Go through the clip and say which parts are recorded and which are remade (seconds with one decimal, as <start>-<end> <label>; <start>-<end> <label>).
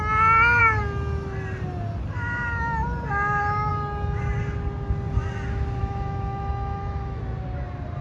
0.0-5.8 recorded; 5.8-7.2 remade; 7.2-8.0 recorded